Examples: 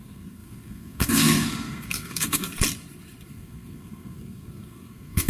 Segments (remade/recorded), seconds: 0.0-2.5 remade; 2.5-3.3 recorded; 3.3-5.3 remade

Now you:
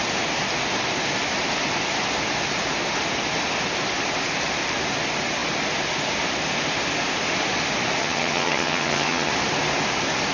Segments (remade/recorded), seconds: 0.0-8.0 recorded; 8.0-9.3 remade; 9.3-10.3 recorded

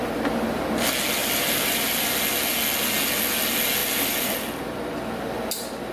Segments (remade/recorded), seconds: 0.0-1.2 recorded; 1.2-2.1 remade; 2.1-3.8 recorded; 3.8-4.4 remade; 4.4-5.9 recorded

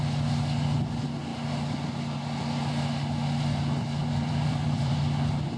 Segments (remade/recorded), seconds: 0.0-4.0 recorded; 4.0-5.0 remade; 5.0-5.6 recorded

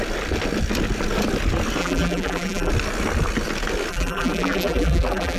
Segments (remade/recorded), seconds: 0.0-1.8 recorded; 1.8-2.7 remade; 2.7-3.9 recorded; 3.9-5.4 remade

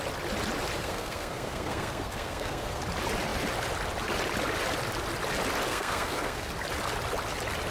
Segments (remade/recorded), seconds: 0.0-0.8 recorded; 0.8-2.8 remade; 2.8-5.7 recorded; 5.7-6.5 remade; 6.5-7.7 recorded

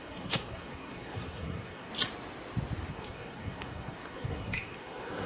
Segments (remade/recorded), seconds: 0.0-1.9 remade; 1.9-2.9 recorded; 2.9-5.3 remade